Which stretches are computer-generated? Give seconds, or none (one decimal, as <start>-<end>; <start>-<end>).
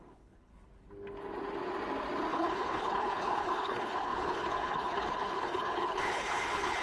0.0-0.5; 2.3-6.8